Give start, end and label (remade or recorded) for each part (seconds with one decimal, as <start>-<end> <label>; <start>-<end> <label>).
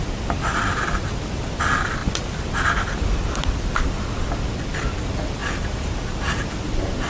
0.0-1.6 remade; 1.6-7.1 recorded